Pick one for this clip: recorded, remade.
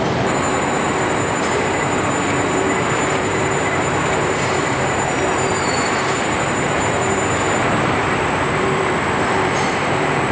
remade